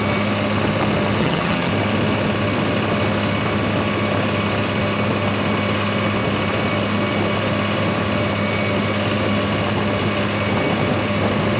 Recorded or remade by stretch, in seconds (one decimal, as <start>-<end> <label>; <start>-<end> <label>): 0.0-1.2 recorded; 1.2-1.7 remade; 1.7-11.6 recorded